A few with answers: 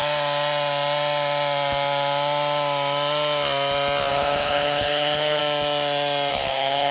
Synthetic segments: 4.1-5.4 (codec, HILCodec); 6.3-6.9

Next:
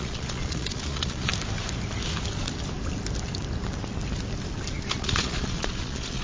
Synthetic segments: 0.0-1.3 (vocoder, Vocos); 5.0-6.2

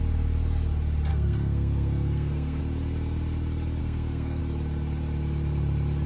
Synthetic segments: 1.1-2.6 (codec, SNAC); 3.8-4.4

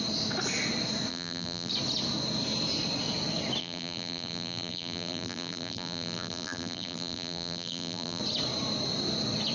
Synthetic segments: 1.1-1.7 (vocoder, BigVGAN v2); 3.6-8.2

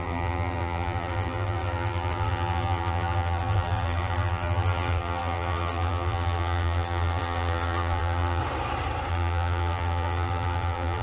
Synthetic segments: 0.0-8.4 (vocoder, BigVGAN v2); 9.1-11.0